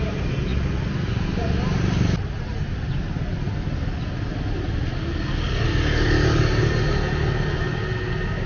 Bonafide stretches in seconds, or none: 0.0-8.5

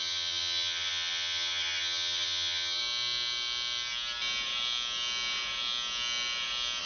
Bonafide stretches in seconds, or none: 2.8-6.8

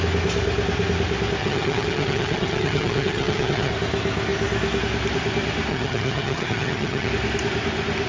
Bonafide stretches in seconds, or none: 0.0-1.4; 3.7-5.7; 7.1-8.1

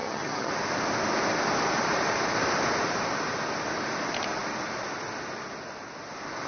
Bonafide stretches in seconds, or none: 0.5-6.5